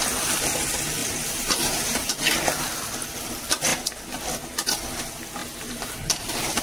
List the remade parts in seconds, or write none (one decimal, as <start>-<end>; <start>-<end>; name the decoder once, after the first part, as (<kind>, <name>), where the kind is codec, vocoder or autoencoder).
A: 1.0-2.1 (vocoder, BigVGAN v2); 5.4-6.6